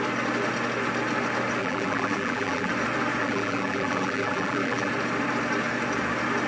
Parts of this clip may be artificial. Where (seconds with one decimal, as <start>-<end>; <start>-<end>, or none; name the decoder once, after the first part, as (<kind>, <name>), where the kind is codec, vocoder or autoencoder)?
1.6-2.7 (vocoder, BigVGAN v2); 3.2-4.9